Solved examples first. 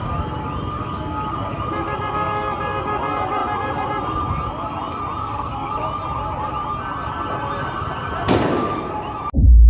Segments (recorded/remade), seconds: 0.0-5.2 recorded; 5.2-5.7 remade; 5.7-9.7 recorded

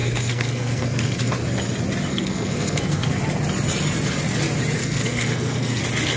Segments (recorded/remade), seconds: 0.0-1.3 remade; 1.3-2.1 recorded; 2.1-3.2 remade; 3.2-4.8 recorded; 4.8-5.8 remade; 5.8-6.2 recorded

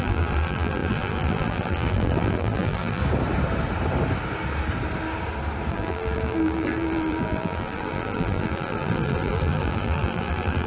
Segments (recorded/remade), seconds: 0.0-3.0 remade; 3.0-5.7 recorded; 5.7-10.7 remade

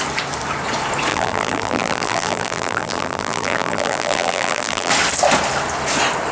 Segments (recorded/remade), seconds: 0.0-1.1 recorded; 1.1-4.9 remade; 4.9-6.3 recorded

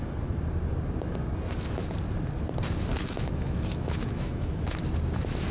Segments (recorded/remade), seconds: 0.0-3.0 recorded; 3.0-4.8 remade; 4.8-5.5 recorded

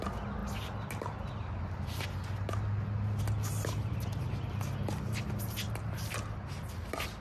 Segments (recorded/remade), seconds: 0.0-7.2 recorded